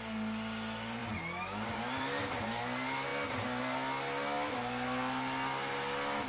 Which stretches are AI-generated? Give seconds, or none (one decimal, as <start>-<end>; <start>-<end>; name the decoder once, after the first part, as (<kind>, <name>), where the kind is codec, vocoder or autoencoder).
none